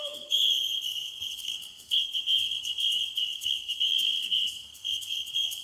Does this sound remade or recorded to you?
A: remade